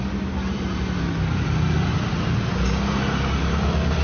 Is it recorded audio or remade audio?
recorded